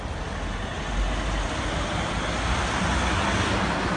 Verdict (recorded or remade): recorded